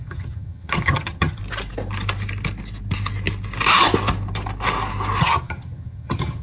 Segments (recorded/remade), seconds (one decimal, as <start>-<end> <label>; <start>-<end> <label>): 0.0-1.4 remade; 1.4-5.2 recorded; 5.2-6.4 remade